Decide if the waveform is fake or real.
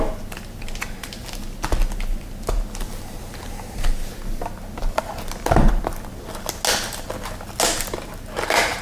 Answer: real